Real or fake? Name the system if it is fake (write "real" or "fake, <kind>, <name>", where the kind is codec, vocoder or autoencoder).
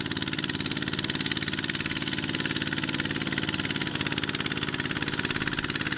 real